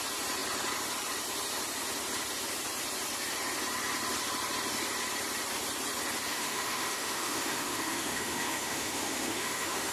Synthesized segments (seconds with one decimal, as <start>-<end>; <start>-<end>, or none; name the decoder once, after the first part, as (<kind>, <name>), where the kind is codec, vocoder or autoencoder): 6.3-9.9 (autoencoder, DAC-VAE)